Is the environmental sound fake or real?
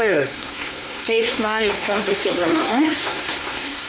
fake